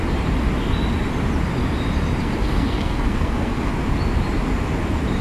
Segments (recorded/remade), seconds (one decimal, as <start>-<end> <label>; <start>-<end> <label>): 0.0-2.2 recorded; 2.2-3.7 remade; 3.7-5.2 recorded